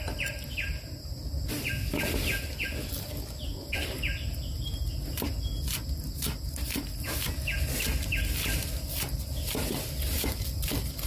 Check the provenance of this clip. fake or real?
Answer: real